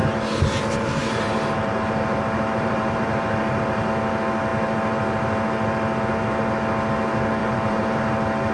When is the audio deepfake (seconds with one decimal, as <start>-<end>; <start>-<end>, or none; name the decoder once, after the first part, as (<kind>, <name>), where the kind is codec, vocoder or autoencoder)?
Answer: 0.0-0.6 (vocoder, BigVGAN v2); 1.0-3.9; 7.4-8.0